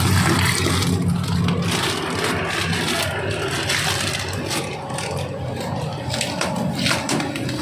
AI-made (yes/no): no